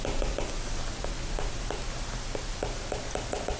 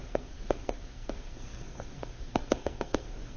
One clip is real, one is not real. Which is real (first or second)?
first